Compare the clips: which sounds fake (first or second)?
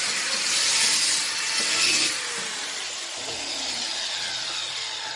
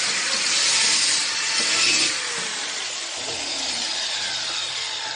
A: second